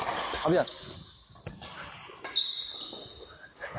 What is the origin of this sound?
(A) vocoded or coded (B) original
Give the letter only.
B